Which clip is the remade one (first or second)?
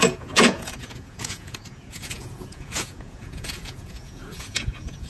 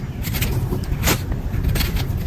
first